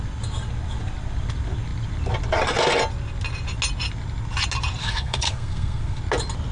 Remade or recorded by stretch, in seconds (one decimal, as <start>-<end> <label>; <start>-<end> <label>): 0.0-4.8 recorded; 4.8-6.0 remade; 6.0-6.5 recorded